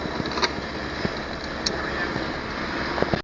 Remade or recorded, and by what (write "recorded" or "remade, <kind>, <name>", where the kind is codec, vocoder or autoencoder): recorded